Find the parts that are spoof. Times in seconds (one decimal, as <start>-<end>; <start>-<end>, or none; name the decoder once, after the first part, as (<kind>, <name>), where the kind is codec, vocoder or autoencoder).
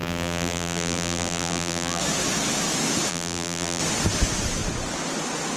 0.0-2.0 (vocoder, BigVGAN v2); 3.1-3.8